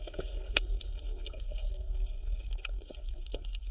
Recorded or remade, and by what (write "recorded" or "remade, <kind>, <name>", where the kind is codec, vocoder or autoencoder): remade, codec, SNAC